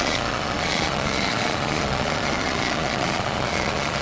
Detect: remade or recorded remade